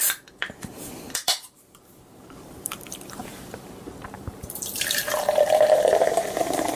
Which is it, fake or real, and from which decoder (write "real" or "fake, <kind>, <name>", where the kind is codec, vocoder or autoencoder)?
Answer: fake, vocoder, BigVGAN v2